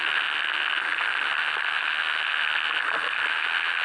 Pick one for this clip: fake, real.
real